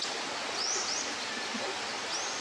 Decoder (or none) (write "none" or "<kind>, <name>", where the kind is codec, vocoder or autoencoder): none